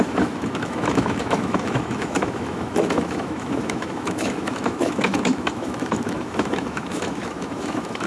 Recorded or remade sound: remade